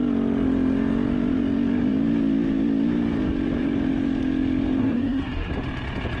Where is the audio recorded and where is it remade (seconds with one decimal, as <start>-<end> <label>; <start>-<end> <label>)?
0.0-4.8 recorded; 4.8-5.5 remade; 5.5-6.2 recorded